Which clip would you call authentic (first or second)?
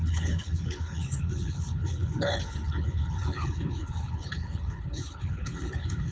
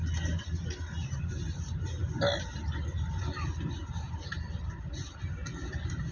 second